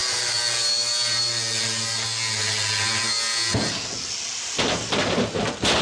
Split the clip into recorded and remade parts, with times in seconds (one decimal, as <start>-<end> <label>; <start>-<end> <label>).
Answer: 0.0-5.8 recorded